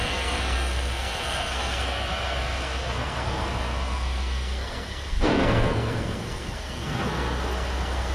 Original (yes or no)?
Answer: no